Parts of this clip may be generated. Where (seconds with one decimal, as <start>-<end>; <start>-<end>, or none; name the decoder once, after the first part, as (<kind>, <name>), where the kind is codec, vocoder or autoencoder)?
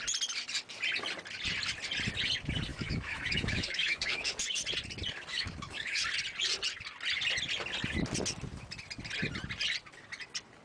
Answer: 2.7-4.3 (autoencoder, DAC-VAE); 5.3-6.0